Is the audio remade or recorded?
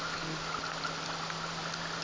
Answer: recorded